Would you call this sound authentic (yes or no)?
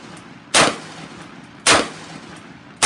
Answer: yes